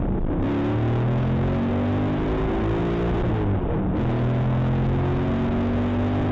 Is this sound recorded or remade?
recorded